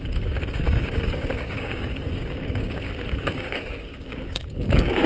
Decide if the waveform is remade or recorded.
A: remade